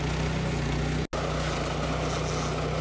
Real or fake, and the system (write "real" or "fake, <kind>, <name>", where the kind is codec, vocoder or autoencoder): real